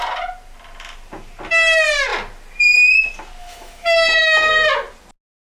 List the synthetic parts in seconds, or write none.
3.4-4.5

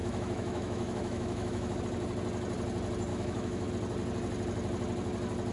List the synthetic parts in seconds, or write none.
0.0-1.8; 3.1-3.7

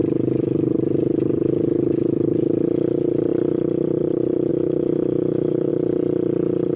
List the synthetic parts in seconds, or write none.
4.5-5.7

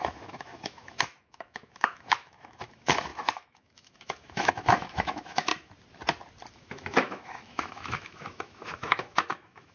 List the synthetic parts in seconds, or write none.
0.0-5.5; 6.5-9.7

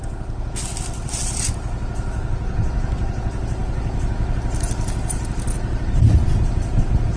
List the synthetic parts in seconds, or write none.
none

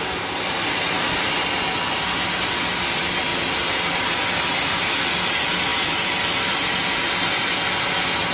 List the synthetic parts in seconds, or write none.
none

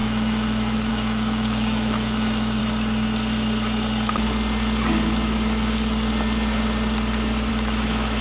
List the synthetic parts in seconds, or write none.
0.0-2.6; 7.5-8.2